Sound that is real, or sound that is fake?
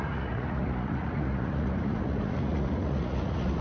fake